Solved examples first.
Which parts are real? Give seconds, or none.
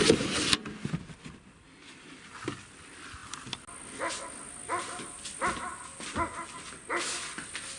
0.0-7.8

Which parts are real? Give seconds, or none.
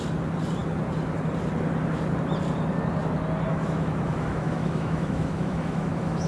0.0-3.5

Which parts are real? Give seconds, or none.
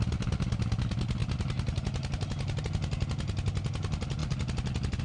0.0-5.0